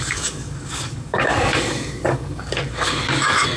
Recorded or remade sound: remade